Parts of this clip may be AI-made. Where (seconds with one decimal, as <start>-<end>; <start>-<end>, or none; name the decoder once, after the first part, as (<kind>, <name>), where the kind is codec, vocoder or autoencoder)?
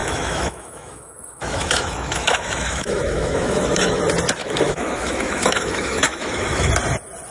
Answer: 0.0-4.0 (autoencoder, DAC-VAE); 4.4-6.7